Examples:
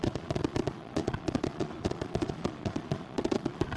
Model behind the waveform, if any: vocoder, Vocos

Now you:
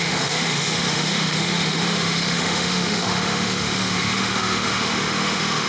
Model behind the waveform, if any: autoencoder, DAC-VAE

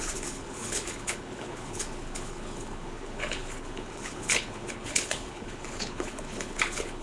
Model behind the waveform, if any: codec, HILCodec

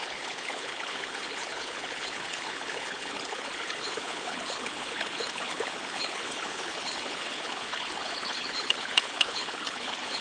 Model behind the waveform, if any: codec, HILCodec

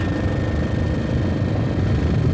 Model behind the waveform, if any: none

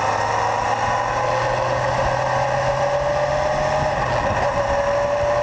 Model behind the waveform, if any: none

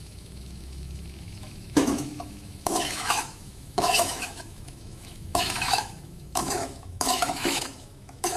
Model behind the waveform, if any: autoencoder, DAC-VAE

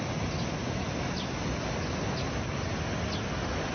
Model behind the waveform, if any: none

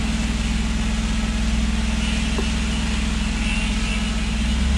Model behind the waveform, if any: none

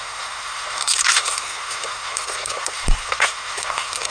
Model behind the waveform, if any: codec, SNAC